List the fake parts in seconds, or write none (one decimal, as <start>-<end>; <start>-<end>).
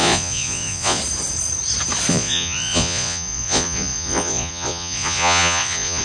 0.0-1.0; 2.1-6.0